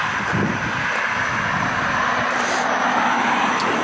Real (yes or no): yes